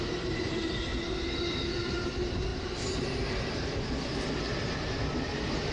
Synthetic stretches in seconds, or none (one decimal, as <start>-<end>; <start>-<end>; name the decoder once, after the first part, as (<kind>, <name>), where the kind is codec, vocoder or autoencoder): none